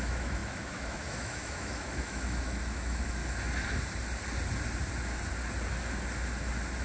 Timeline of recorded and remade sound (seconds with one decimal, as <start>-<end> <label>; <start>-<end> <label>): 0.0-3.2 remade; 3.2-6.8 recorded